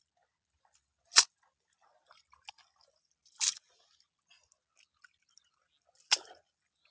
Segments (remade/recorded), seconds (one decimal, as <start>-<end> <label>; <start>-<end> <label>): 0.0-6.9 recorded